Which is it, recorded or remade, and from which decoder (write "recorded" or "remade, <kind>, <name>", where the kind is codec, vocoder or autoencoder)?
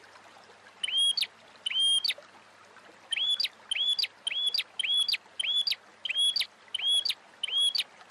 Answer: recorded